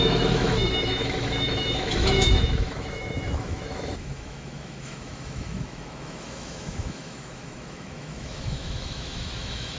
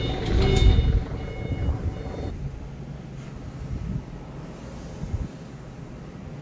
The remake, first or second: first